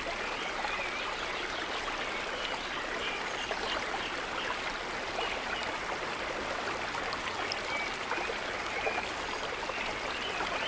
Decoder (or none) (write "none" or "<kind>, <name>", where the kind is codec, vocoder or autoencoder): none